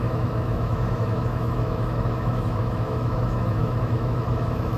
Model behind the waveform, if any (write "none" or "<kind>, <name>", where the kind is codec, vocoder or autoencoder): autoencoder, DAC-VAE